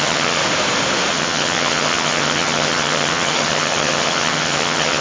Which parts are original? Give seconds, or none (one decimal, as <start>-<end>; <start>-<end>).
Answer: 0.4-1.1